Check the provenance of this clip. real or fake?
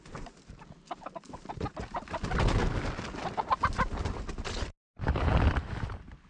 real